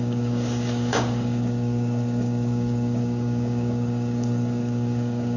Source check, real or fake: fake